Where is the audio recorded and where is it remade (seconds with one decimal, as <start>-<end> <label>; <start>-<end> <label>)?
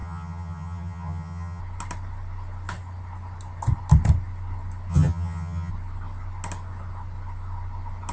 0.0-1.6 remade; 1.6-4.9 recorded; 4.9-5.7 remade; 5.7-8.1 recorded